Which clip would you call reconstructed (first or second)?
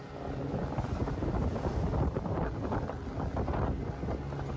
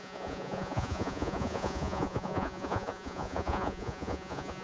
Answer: second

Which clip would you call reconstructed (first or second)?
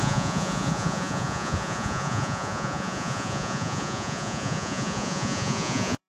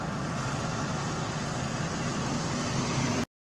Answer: first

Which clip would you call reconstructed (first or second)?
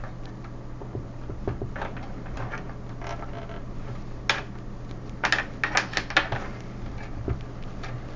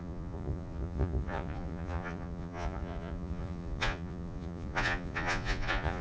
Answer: second